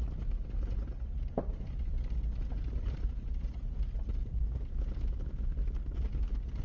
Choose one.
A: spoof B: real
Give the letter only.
B